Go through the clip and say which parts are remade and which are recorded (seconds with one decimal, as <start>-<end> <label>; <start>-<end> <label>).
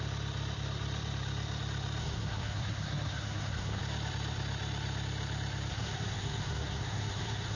0.0-2.0 recorded; 2.0-3.8 remade; 3.8-5.7 recorded; 5.7-7.6 remade